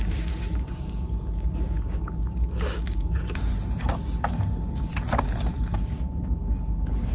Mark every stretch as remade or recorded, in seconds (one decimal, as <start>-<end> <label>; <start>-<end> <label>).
0.0-3.5 remade; 3.5-4.3 recorded; 4.3-4.9 remade; 4.9-5.6 recorded; 5.6-7.1 remade